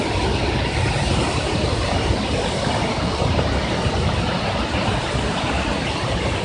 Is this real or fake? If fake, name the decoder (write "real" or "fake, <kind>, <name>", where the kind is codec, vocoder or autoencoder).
real